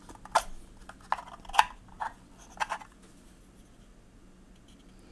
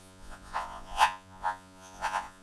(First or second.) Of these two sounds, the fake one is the second